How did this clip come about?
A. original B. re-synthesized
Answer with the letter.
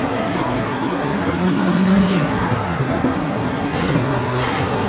B